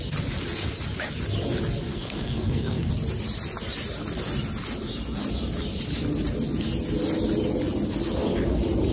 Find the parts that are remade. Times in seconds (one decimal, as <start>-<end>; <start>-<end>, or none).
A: 1.9-2.9